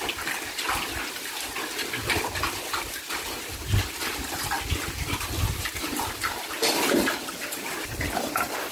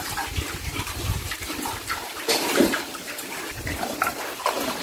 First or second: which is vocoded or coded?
second